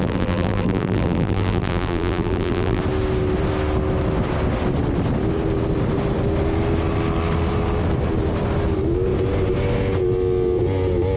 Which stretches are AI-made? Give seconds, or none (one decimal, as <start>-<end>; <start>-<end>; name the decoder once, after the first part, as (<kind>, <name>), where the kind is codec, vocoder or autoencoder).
0.0-2.8 (vocoder, BigVGAN v2)